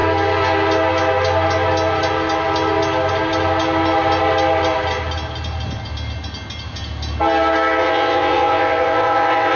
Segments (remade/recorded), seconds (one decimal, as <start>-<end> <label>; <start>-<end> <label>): 0.0-7.8 recorded; 7.8-9.6 remade